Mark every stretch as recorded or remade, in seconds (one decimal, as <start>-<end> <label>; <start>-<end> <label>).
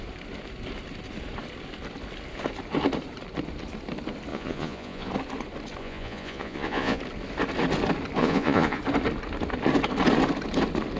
0.0-4.3 recorded; 4.3-5.1 remade; 5.1-5.8 recorded; 5.8-7.0 remade; 7.0-8.2 recorded; 8.2-8.8 remade; 8.8-11.0 recorded